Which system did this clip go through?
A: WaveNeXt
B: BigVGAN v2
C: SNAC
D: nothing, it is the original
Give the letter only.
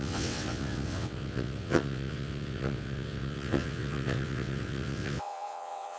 A